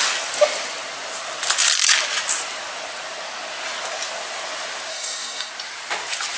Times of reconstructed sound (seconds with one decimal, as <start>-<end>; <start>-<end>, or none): 4.9-5.5